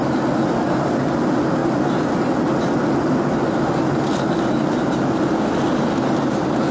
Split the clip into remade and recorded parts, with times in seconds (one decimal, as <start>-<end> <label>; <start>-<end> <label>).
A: 0.0-6.7 recorded